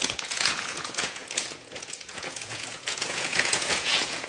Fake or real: fake